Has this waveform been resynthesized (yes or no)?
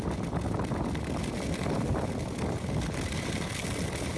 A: no